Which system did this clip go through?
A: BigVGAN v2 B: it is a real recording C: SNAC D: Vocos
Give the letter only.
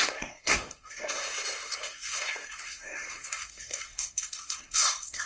C